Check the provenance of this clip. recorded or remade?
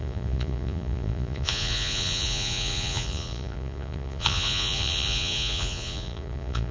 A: remade